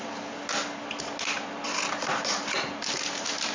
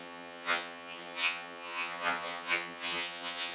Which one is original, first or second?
first